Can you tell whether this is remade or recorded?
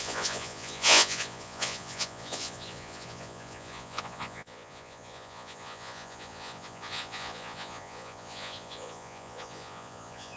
remade